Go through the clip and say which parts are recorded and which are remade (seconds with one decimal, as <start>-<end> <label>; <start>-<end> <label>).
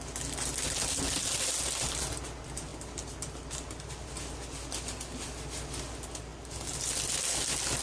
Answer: 0.0-7.8 recorded